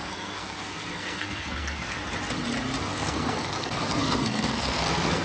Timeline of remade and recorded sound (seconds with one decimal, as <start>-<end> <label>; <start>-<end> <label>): 0.0-2.0 remade; 2.0-2.8 recorded; 2.8-5.2 remade